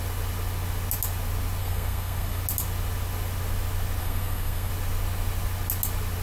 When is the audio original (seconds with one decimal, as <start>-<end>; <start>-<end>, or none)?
0.0-1.6; 2.4-4.0; 4.7-6.2